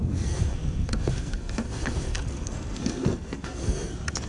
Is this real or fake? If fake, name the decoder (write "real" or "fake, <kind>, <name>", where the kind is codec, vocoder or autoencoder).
fake, codec, SNAC